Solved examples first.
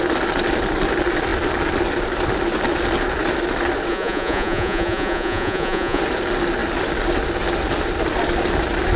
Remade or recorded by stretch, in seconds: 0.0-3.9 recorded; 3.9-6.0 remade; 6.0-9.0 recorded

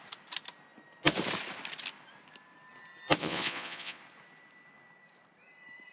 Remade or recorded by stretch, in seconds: 0.0-3.2 recorded; 3.2-4.0 remade; 4.0-5.9 recorded

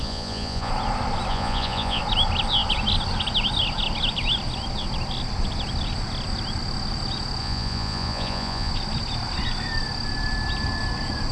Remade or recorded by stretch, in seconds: 0.0-0.7 remade; 0.7-1.3 recorded; 1.3-2.0 remade; 2.0-7.4 recorded; 7.4-8.7 remade; 8.7-11.3 recorded

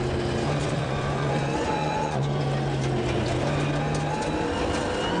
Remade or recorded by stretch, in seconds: 0.0-0.6 recorded; 0.6-2.4 remade; 2.4-5.2 recorded